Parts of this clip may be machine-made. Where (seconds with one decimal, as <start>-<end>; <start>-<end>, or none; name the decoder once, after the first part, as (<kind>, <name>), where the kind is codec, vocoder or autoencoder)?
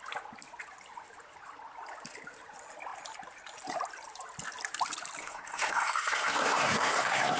5.2-7.4 (codec, SNAC)